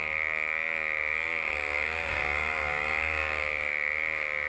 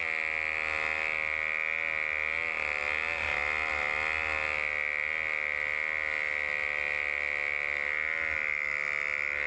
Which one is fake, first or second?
first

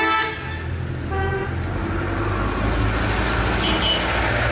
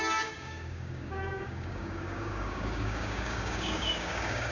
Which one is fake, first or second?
second